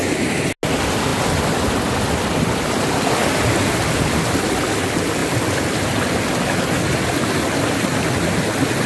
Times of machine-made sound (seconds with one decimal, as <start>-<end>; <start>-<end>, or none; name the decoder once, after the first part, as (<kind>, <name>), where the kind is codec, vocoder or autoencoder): none